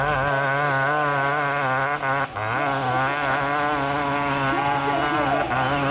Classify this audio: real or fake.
real